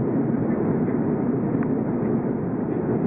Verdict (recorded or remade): recorded